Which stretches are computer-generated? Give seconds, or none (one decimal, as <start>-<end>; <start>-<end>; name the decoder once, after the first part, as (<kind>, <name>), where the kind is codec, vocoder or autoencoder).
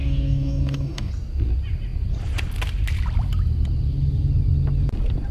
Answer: 0.0-1.1 (codec, DAC)